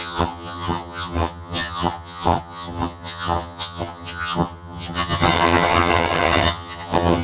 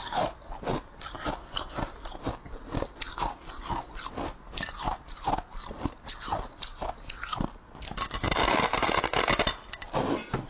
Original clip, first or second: second